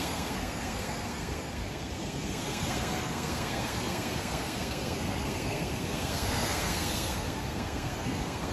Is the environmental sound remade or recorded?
remade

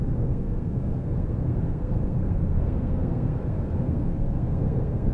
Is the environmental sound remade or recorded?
remade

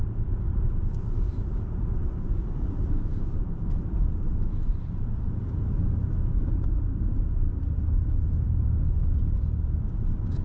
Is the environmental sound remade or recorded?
remade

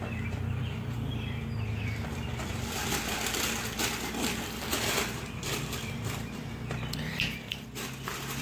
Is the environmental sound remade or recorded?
remade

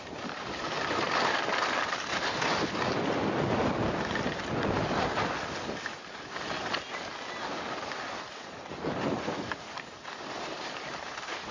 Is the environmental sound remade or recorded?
recorded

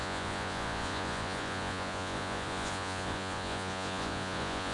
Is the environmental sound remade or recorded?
remade